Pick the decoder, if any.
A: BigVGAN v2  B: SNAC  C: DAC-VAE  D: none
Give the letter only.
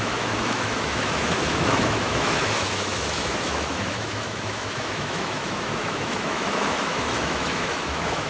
C